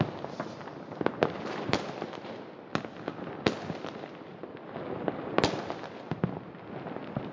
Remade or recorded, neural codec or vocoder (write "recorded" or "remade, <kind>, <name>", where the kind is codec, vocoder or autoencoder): recorded